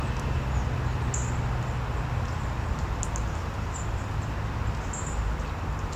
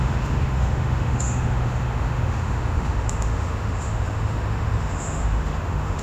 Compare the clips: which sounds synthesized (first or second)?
second